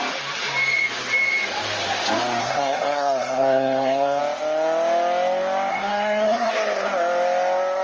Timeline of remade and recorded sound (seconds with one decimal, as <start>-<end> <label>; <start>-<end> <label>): 0.0-2.4 recorded; 2.4-4.2 remade; 4.2-5.7 recorded; 5.7-6.5 remade; 6.5-7.8 recorded